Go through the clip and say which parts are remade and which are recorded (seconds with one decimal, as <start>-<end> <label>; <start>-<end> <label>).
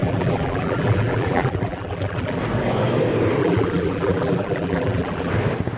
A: 0.0-2.4 remade; 2.4-3.4 recorded; 3.4-5.3 remade; 5.3-5.8 recorded